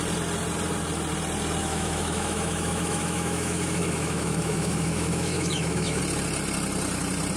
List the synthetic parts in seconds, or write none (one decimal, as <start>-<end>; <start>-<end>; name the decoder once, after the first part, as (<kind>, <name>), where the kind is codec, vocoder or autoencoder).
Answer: 1.6-6.0 (autoencoder, DAC-VAE)